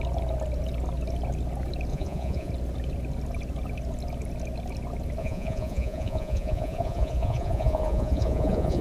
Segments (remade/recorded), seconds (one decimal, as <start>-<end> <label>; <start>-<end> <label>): 0.0-1.9 recorded; 1.9-2.5 remade; 2.5-5.2 recorded; 5.2-8.8 remade